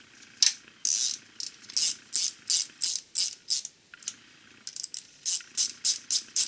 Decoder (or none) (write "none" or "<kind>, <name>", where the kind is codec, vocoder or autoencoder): none